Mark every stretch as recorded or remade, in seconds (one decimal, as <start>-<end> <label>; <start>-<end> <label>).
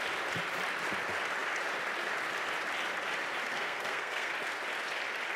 0.0-3.5 recorded; 3.5-4.3 remade; 4.3-5.4 recorded